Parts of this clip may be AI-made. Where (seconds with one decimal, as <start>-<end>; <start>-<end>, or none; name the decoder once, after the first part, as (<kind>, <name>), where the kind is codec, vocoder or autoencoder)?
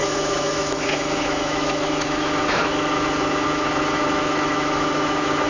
0.0-5.5 (autoencoder, DAC-VAE)